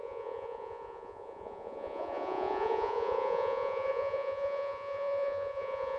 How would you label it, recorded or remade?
remade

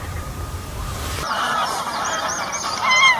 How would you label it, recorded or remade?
remade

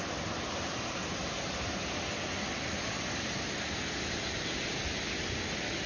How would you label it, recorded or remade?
recorded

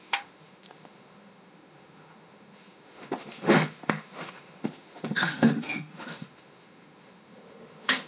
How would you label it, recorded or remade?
remade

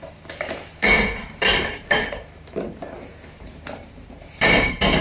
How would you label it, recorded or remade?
remade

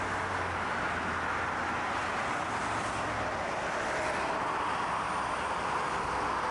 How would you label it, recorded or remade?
recorded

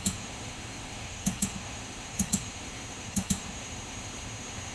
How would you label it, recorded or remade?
remade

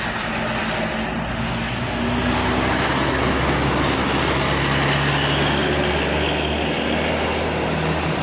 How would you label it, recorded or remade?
recorded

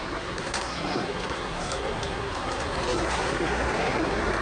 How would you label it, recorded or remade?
remade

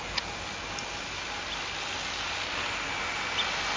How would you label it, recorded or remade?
recorded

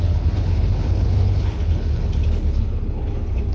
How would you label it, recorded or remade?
remade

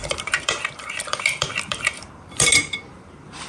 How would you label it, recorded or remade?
remade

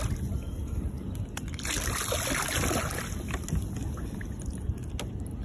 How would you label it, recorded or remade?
recorded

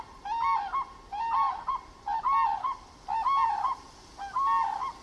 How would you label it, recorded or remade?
recorded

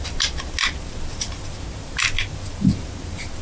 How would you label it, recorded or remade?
recorded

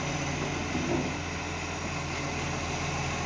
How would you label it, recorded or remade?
recorded